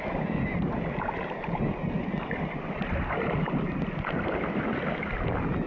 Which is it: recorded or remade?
recorded